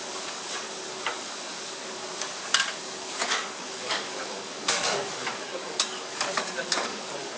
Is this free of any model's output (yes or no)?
no